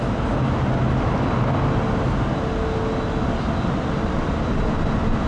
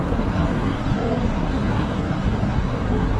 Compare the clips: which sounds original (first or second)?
first